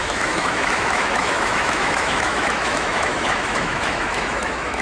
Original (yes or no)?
no